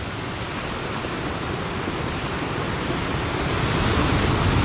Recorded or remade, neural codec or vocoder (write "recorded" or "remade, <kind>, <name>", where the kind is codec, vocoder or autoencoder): recorded